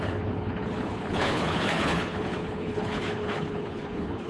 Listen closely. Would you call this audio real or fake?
fake